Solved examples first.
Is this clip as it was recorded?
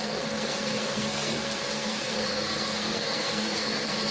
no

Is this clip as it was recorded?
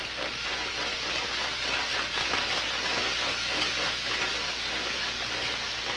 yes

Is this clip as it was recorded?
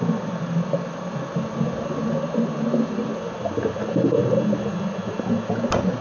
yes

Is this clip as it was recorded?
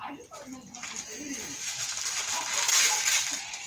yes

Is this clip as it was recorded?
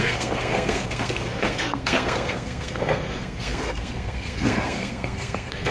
no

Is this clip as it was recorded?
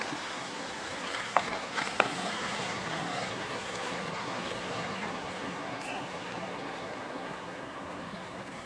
no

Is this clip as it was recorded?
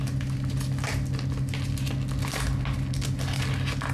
yes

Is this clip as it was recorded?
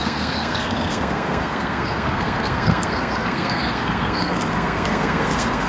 no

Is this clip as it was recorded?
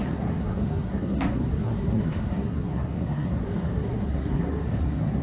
no